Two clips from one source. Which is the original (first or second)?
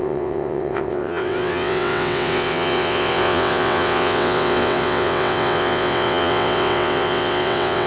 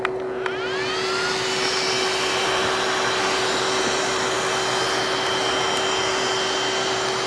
second